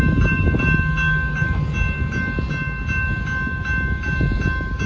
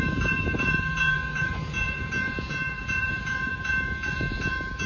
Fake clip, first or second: second